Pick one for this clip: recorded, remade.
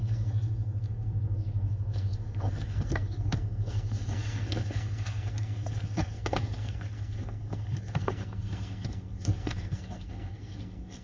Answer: remade